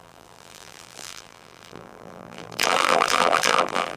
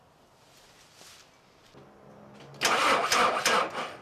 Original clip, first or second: second